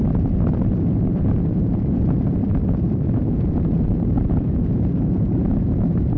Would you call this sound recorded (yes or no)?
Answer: no